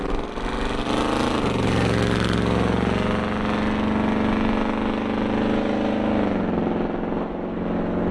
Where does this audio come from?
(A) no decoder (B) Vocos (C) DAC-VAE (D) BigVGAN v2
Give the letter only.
A